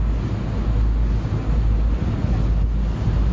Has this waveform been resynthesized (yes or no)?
no